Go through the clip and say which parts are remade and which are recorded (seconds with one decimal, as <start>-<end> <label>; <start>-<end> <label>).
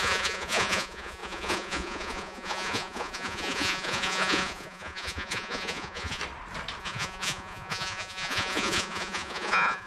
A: 0.0-6.2 remade; 6.2-6.8 recorded; 6.8-9.9 remade